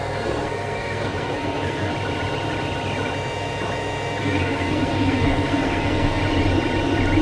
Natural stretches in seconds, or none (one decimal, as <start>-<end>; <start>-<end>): 1.9-4.2; 6.2-7.2

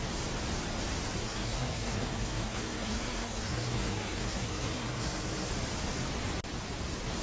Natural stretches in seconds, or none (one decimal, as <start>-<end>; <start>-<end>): 0.0-1.2; 5.5-7.2

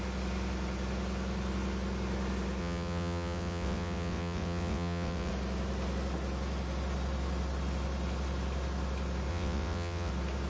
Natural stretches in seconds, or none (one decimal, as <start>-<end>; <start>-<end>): 0.0-2.6; 5.3-9.3; 10.1-10.5

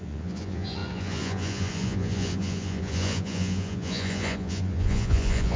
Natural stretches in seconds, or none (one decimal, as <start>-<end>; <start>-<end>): none

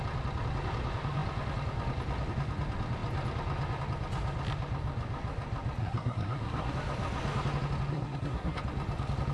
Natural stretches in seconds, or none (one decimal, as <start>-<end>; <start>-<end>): 0.0-5.8; 6.7-7.9; 8.6-9.3

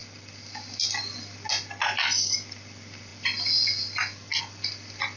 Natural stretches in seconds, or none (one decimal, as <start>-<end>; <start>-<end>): 0.0-5.2

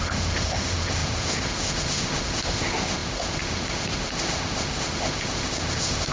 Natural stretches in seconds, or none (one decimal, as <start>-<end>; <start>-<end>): none

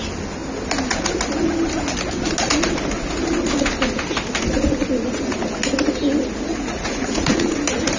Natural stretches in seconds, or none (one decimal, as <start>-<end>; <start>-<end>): 0.0-6.5; 7.6-8.0